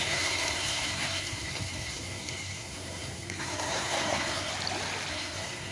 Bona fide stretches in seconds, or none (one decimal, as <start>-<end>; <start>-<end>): 4.5-5.1

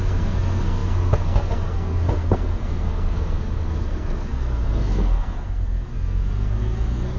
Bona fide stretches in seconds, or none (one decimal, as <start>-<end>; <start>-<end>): none

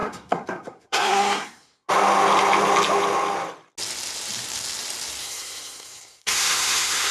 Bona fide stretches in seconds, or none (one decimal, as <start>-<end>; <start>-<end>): 1.9-5.2

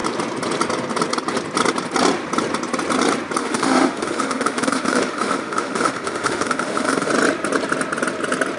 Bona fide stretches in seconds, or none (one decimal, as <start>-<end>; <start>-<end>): 0.0-3.4; 7.1-8.6

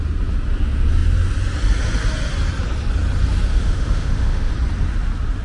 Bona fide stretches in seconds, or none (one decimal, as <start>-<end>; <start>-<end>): 0.0-3.5; 4.5-5.4

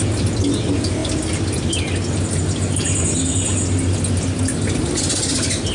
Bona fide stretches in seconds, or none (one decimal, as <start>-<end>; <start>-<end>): 0.0-5.7

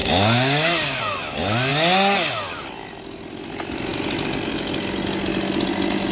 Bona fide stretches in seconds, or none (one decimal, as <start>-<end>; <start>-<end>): 1.0-6.1